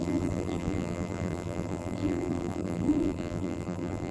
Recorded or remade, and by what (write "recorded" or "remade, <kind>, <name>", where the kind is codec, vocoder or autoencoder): remade, vocoder, BigVGAN v2